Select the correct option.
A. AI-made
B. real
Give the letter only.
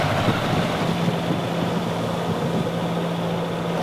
B